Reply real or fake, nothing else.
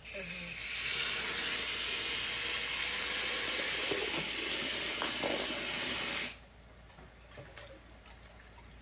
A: real